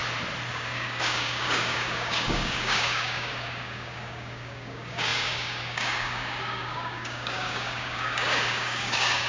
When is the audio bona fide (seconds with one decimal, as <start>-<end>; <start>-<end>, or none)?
0.0-0.5